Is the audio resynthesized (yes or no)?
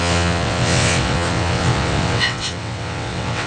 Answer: yes